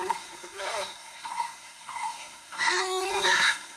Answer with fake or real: fake